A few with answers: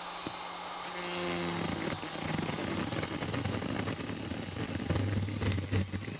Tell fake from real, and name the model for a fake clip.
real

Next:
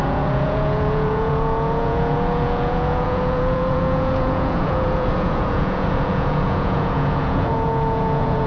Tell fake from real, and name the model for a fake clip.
fake, vocoder, Vocos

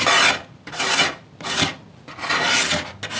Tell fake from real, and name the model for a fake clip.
real